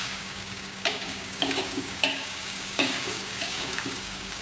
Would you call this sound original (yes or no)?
no